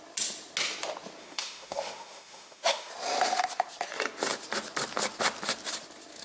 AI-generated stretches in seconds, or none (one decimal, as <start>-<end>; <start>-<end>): 1.2-2.9